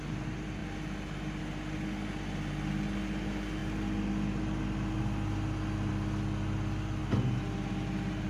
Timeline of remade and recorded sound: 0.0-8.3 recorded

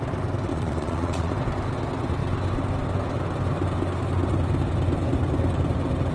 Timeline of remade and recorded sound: 0.0-0.5 recorded; 0.5-1.3 remade; 1.3-6.1 recorded

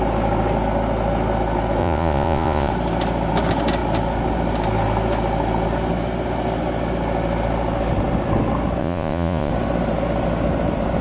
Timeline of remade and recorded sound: 0.0-1.8 recorded; 1.8-2.7 remade; 2.7-8.8 recorded; 8.8-9.5 remade; 9.5-11.0 recorded

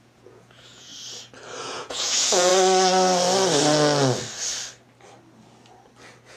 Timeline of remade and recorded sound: 0.0-0.9 remade; 0.9-1.6 recorded; 1.6-2.5 remade; 2.5-6.4 recorded

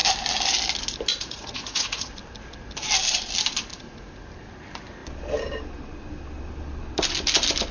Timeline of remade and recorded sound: 0.0-1.1 recorded; 1.1-2.1 remade; 2.1-7.7 recorded

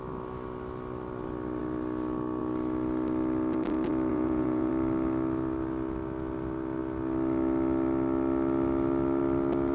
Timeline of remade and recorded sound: 0.0-4.1 recorded; 4.1-4.7 remade; 4.7-9.7 recorded